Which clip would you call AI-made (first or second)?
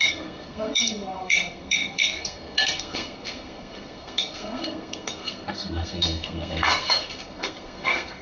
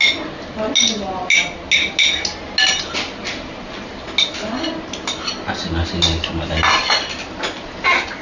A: first